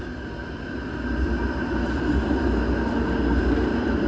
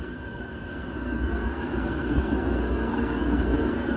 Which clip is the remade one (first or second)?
second